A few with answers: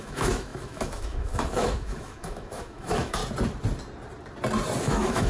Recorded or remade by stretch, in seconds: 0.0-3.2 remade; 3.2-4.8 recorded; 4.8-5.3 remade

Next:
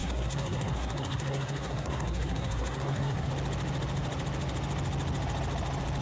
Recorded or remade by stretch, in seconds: 0.0-3.3 remade; 3.3-6.0 recorded

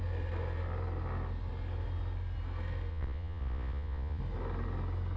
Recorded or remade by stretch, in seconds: 0.0-2.9 recorded; 2.9-4.2 remade; 4.2-5.2 recorded

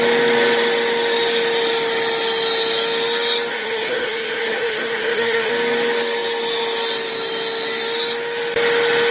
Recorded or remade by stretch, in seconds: 0.0-3.5 recorded; 3.5-5.5 remade; 5.5-9.1 recorded

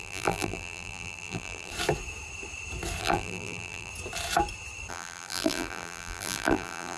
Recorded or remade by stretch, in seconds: 0.0-1.7 remade; 1.7-3.0 recorded; 3.0-3.9 remade; 3.9-4.9 recorded; 4.9-7.0 remade

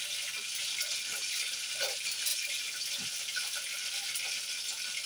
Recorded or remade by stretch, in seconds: 0.0-5.1 recorded

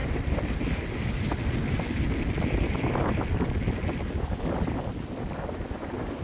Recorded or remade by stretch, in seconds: 0.0-6.2 recorded